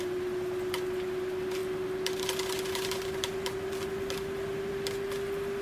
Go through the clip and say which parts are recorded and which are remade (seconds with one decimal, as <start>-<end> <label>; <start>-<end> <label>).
0.0-5.6 recorded